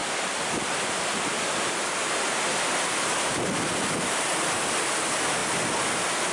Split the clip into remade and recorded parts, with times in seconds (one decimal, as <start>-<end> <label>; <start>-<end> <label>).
0.0-6.3 recorded